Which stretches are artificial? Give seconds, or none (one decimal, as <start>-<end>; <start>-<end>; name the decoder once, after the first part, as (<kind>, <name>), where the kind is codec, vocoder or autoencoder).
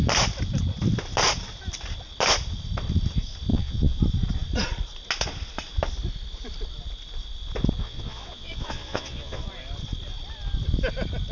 3.5-4.0 (vocoder, Vocos); 7.8-9.4